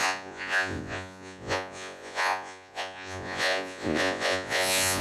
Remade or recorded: remade